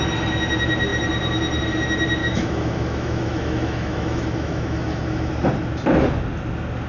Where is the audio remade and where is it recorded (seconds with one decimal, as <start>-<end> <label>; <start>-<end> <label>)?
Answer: 0.0-2.2 recorded; 2.2-5.3 remade; 5.3-6.9 recorded